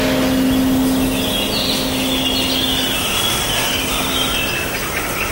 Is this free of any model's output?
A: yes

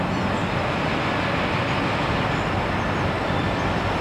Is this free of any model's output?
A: yes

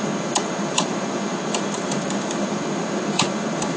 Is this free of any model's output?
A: no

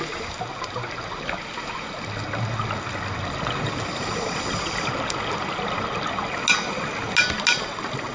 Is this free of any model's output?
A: yes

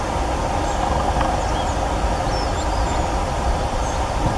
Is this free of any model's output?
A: yes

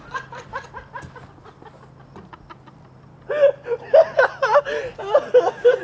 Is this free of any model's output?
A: yes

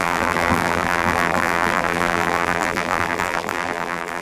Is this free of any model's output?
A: no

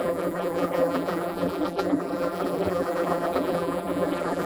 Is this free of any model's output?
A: no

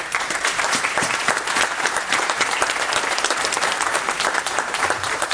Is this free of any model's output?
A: no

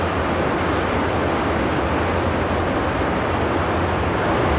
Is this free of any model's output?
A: yes